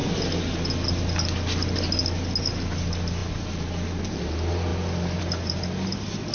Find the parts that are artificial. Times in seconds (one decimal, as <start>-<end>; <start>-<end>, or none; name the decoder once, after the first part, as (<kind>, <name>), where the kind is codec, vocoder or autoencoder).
none